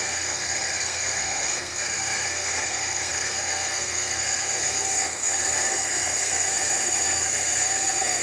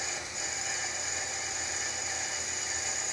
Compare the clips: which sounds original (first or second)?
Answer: second